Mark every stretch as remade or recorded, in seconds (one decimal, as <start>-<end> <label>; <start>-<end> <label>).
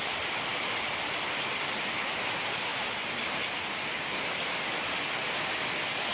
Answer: 0.0-6.1 recorded